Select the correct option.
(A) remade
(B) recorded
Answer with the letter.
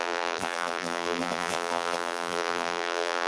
A